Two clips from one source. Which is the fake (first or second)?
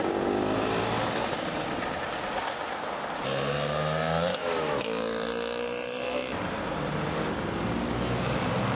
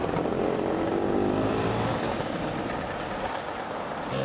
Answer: second